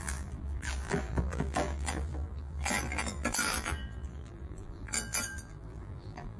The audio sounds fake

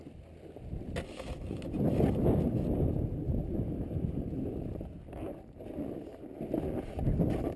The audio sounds real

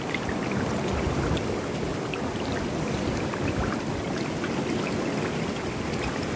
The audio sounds fake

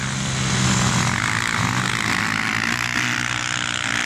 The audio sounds real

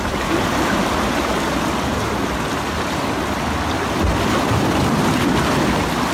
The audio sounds real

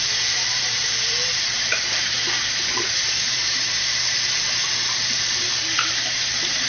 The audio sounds fake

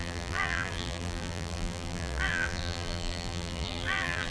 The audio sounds fake